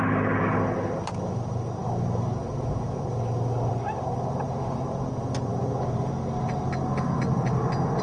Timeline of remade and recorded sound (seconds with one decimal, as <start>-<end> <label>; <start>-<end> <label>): 0.0-8.0 recorded